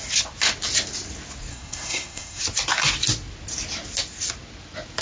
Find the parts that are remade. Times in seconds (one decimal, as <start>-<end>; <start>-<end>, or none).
1.5-2.4